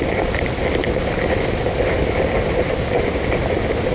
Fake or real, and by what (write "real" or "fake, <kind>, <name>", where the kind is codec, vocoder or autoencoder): real